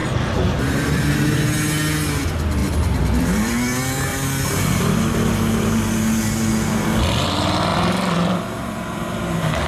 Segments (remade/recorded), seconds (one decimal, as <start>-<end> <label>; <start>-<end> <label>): 0.0-1.3 remade; 1.3-2.6 recorded; 2.6-5.1 remade; 5.1-7.7 recorded; 7.7-9.2 remade; 9.2-9.7 recorded